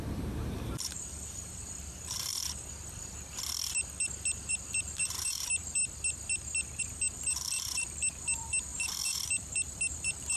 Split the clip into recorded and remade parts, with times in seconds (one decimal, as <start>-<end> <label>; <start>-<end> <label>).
0.0-2.3 remade; 2.3-4.5 recorded; 4.5-5.8 remade; 5.8-6.8 recorded; 6.8-10.4 remade